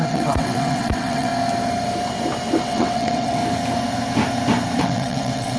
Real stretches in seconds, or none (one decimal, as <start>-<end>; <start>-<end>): 1.3-2.6; 3.4-4.8